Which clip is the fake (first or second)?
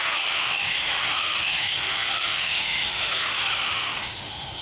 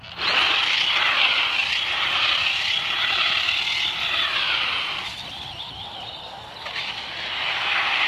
first